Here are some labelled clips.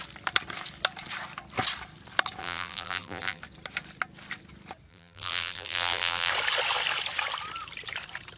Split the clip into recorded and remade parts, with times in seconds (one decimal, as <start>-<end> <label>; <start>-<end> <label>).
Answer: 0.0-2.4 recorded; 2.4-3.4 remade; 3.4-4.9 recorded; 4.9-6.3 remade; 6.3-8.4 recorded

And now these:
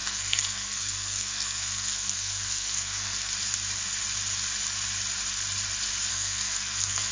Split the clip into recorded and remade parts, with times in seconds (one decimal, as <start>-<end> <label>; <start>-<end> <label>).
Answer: 0.0-3.3 remade; 3.3-6.1 recorded; 6.1-7.1 remade

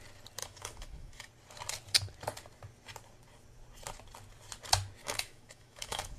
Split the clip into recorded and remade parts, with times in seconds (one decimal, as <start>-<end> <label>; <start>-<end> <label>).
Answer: 0.0-0.4 recorded; 0.4-1.3 remade; 1.3-5.0 recorded; 5.0-6.2 remade